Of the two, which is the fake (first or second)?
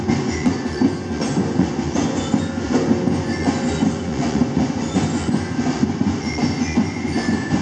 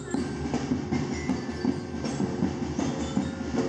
first